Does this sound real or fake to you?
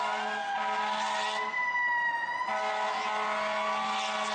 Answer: real